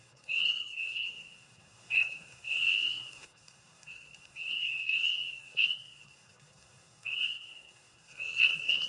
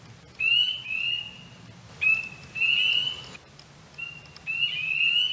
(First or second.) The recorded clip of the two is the second